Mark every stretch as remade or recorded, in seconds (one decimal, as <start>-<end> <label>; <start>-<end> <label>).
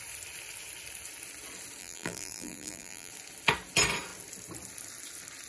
0.0-1.8 recorded; 1.8-3.1 remade; 3.1-5.5 recorded